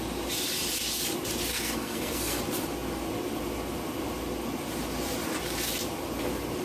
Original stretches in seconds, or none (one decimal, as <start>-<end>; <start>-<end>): 0.0-1.5; 2.4-6.6